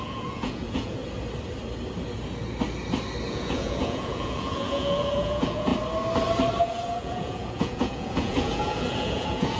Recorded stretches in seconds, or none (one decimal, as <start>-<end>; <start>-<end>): 1.0-3.3; 5.7-6.6